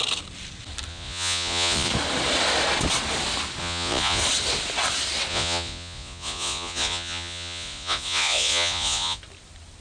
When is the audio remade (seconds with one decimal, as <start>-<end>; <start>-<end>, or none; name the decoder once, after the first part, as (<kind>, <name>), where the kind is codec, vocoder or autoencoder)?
0.9-1.9 (vocoder, Vocos); 3.6-4.2; 5.3-9.2